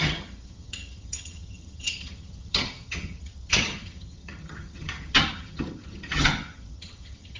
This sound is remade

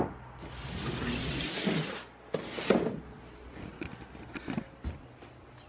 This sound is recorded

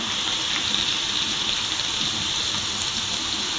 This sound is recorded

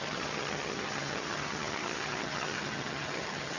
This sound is remade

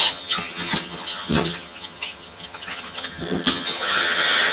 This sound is remade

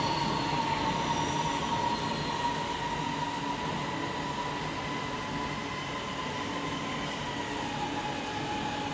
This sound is recorded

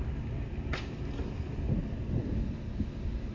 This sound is recorded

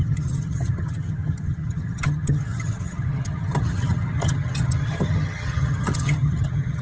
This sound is remade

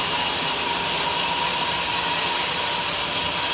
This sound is recorded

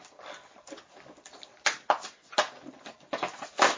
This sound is recorded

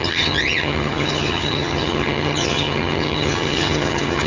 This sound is remade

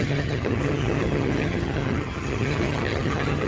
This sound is remade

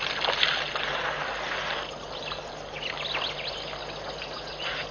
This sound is recorded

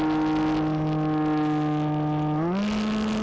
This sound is recorded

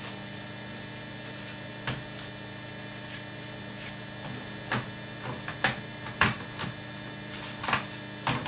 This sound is recorded